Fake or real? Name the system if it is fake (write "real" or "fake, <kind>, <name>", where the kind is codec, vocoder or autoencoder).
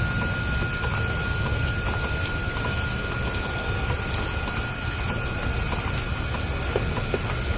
real